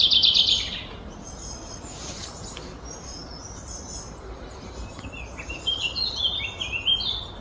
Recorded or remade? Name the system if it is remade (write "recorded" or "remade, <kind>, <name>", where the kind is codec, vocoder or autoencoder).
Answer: recorded